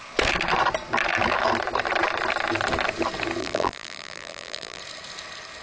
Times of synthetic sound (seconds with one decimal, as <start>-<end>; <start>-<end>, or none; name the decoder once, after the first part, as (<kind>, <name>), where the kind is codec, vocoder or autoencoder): 3.4-4.8 (vocoder, BigVGAN v2)

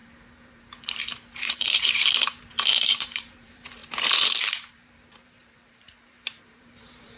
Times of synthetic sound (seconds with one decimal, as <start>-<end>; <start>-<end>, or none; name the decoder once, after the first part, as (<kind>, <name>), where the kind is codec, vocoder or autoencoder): 0.0-3.8 (vocoder, BigVGAN v2); 4.4-7.2

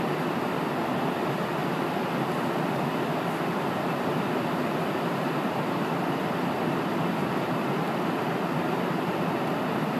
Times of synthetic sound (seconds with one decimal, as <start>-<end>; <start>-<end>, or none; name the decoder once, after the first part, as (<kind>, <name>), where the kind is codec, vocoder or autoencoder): 0.0-1.6 (vocoder, BigVGAN v2); 2.5-10.0

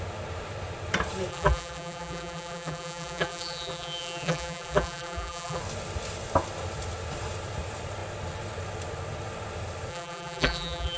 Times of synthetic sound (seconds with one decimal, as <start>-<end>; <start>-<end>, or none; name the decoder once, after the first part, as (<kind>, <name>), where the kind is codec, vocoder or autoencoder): 1.3-5.6 (vocoder, BigVGAN v2); 9.9-11.0

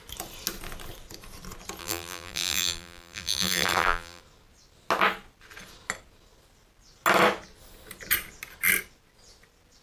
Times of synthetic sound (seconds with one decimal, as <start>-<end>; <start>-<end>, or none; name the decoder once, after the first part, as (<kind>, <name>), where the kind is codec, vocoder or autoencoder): 1.8-4.2 (vocoder, BigVGAN v2)